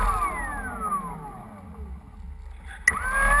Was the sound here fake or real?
real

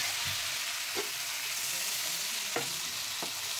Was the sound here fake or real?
real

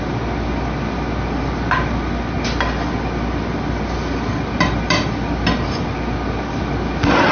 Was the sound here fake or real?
real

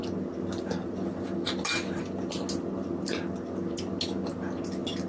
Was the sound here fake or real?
real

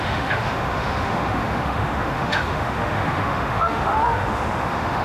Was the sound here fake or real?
fake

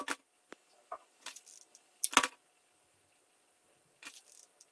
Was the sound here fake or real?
real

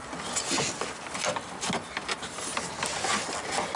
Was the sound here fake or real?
real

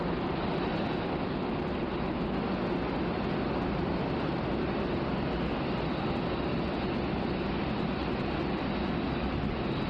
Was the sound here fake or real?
real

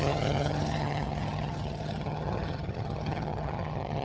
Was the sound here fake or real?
fake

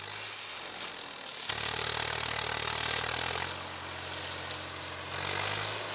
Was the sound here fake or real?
real